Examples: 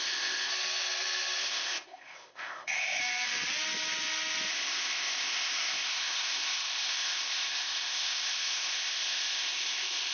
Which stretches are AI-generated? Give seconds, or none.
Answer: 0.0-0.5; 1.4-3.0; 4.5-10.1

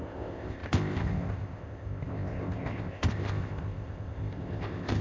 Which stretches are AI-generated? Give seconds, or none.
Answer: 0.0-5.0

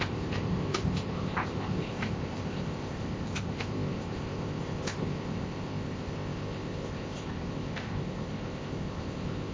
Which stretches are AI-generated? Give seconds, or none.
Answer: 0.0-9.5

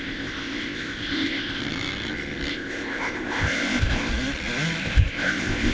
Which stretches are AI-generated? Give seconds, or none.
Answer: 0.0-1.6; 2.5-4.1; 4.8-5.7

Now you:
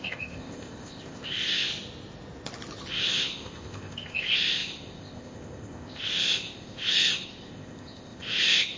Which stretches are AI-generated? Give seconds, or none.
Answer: 0.0-1.7; 2.9-8.8

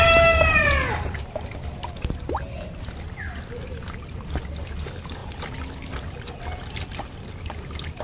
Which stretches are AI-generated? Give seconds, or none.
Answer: none